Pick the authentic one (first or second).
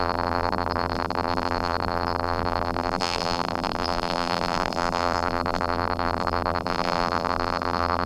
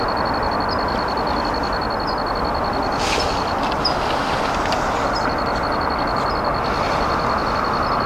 second